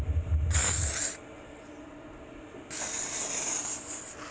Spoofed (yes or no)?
no